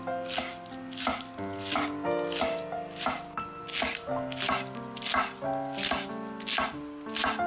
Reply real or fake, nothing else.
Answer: real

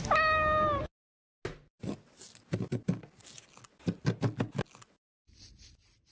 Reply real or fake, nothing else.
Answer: real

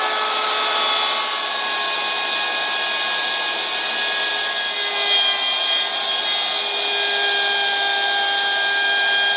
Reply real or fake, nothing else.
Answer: real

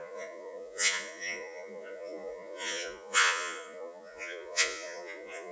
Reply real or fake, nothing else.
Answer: fake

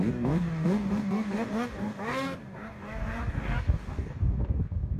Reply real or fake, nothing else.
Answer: fake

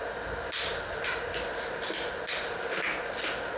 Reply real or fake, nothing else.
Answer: real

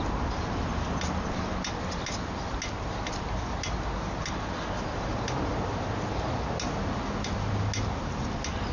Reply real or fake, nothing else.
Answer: real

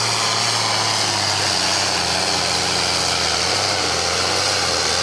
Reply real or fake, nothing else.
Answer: real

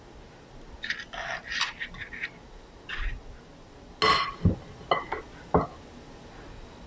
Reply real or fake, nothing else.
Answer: real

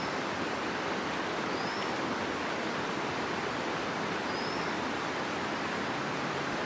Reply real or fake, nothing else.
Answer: real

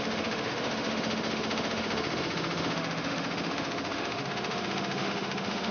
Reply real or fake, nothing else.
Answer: fake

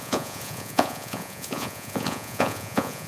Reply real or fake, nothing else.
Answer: fake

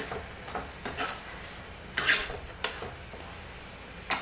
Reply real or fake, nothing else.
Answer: real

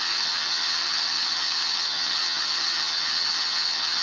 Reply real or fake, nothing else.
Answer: fake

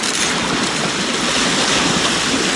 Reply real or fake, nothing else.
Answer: real